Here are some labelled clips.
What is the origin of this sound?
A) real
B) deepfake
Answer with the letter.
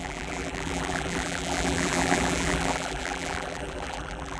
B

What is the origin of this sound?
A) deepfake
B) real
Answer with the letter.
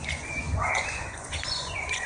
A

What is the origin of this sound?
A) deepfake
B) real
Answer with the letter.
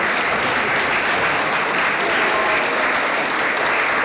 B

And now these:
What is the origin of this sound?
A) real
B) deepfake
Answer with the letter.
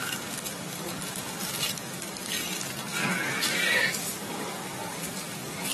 B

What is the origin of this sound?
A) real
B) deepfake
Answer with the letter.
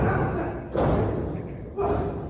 A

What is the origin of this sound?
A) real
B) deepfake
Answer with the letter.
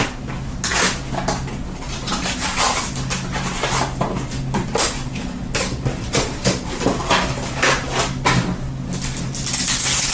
A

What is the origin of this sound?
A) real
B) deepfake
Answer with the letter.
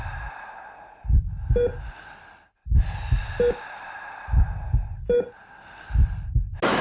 A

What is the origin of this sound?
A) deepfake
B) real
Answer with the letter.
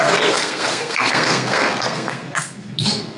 A